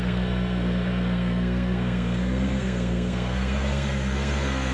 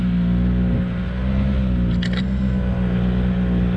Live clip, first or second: second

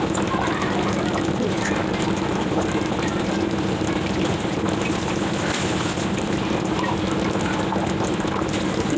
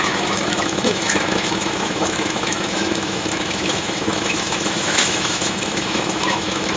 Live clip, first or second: first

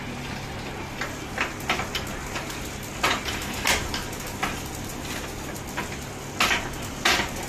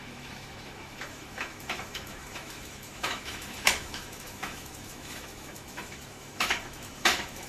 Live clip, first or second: first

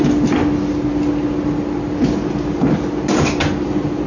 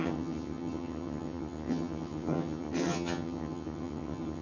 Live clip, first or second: first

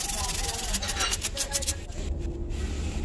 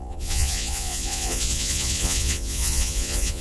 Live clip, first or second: first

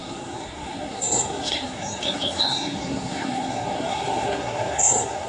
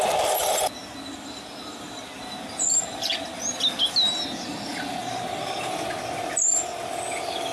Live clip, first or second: second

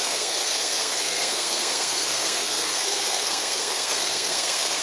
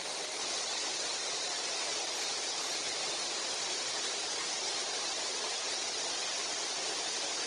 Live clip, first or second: second